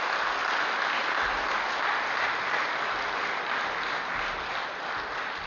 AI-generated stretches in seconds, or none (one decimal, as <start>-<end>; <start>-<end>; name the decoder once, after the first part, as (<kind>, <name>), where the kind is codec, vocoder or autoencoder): none